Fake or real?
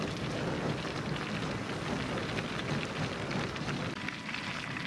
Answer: real